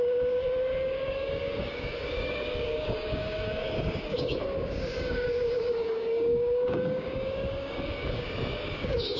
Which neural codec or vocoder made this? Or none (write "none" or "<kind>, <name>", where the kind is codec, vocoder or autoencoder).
codec, DAC